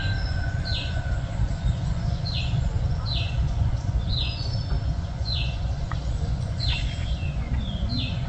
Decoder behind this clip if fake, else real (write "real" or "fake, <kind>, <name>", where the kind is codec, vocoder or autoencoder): fake, vocoder, Vocos